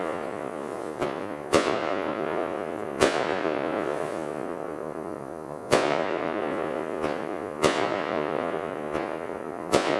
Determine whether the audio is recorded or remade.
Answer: remade